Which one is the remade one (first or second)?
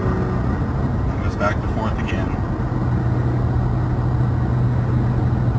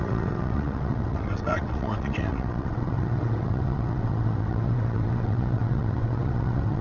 second